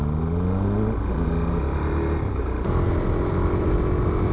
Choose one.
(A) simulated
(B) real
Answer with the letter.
B